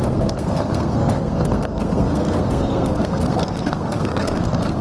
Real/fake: fake